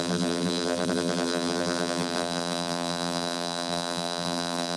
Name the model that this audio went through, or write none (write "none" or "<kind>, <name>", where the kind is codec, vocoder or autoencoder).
vocoder, BigVGAN v2